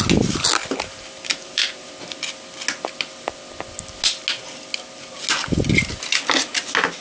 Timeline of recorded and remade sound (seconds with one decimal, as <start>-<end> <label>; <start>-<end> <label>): 0.0-0.6 recorded; 0.6-1.9 remade; 1.9-7.0 recorded